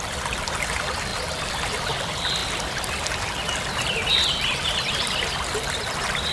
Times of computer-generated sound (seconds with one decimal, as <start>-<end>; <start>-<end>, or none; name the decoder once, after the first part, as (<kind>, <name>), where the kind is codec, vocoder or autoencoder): none